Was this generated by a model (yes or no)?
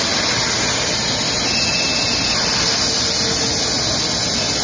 no